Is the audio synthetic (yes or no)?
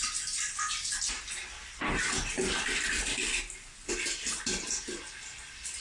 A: no